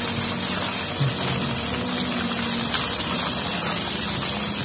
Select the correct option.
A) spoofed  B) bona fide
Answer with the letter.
B